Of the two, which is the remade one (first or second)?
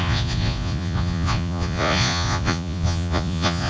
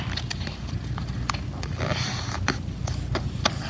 first